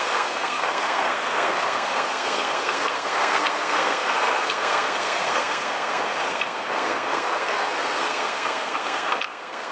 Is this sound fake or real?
fake